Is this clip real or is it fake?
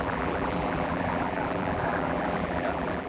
fake